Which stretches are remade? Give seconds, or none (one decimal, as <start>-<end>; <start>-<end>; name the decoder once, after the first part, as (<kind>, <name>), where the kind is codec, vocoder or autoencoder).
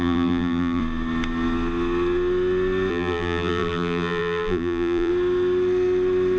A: 0.0-0.8 (vocoder, BigVGAN v2); 2.9-5.1